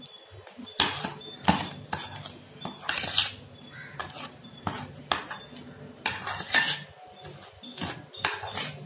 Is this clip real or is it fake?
real